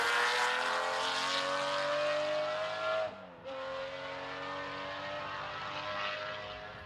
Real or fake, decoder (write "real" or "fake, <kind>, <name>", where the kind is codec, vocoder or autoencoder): real